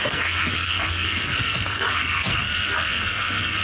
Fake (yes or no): yes